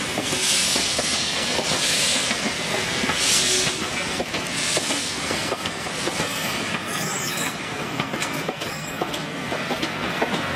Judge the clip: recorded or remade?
remade